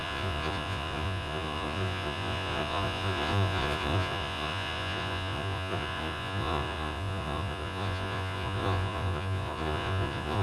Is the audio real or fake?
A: fake